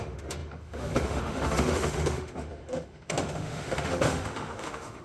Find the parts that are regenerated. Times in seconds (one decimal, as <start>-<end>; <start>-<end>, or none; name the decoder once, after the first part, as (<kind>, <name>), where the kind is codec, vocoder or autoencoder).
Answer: 0.0-5.0 (autoencoder, DAC-VAE)